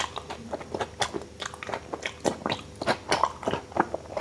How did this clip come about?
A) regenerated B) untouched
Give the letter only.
B